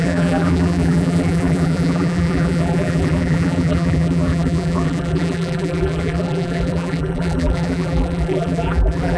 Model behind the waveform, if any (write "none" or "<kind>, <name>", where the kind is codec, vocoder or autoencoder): vocoder, BigVGAN v2